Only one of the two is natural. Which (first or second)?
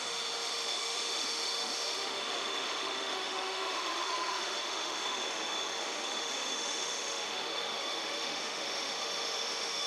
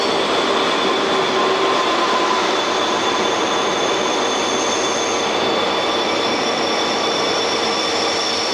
second